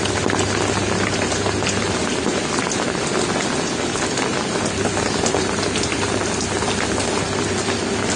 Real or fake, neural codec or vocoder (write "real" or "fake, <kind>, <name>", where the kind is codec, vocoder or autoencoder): real